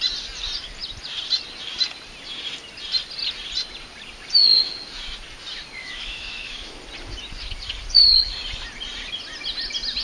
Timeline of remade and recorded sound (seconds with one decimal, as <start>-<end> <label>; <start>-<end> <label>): 0.0-5.8 recorded; 5.8-6.8 remade; 6.8-10.0 recorded